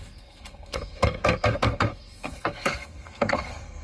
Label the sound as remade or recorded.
remade